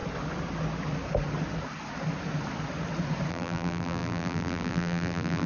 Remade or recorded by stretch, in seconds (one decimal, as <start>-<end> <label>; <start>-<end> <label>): 0.0-3.3 recorded; 3.3-5.5 remade